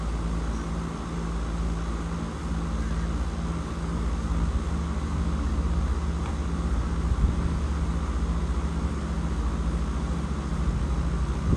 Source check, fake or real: real